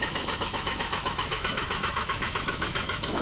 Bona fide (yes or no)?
no